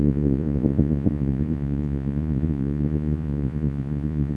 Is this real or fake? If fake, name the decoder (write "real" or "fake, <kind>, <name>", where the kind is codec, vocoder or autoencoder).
fake, vocoder, Vocos